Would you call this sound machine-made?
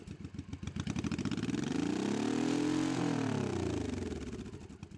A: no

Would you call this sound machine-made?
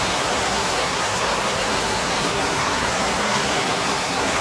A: yes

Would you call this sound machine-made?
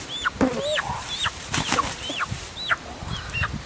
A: no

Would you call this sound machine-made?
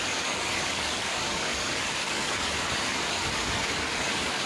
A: yes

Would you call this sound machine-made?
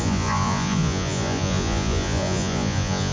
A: yes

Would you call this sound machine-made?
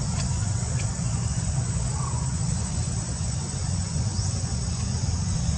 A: yes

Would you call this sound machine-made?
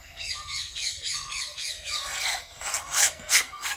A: yes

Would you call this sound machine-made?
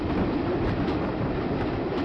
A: yes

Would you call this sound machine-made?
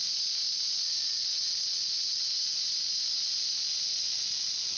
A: no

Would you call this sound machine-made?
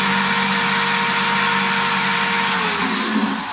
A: no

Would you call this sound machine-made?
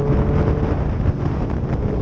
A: no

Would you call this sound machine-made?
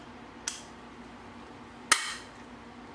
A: no